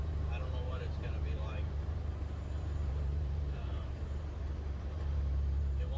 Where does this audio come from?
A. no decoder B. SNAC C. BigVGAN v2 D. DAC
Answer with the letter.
C